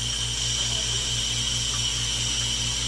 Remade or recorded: recorded